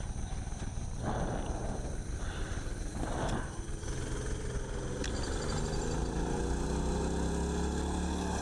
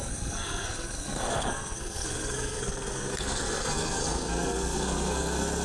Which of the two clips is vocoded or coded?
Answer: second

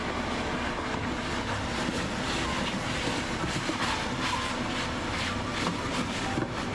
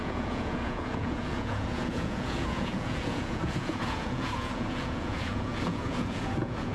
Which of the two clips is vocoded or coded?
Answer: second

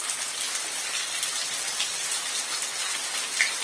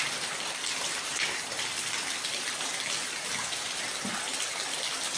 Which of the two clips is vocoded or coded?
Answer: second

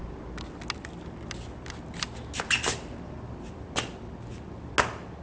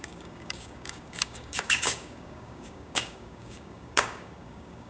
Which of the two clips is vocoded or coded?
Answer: second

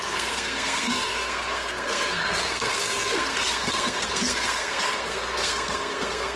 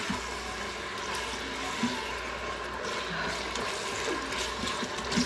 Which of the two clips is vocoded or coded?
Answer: first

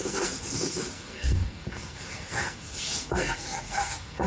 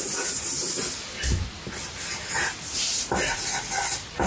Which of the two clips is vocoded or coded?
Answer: first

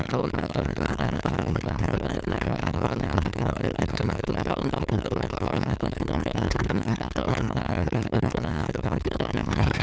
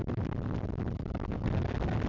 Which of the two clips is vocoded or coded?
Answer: first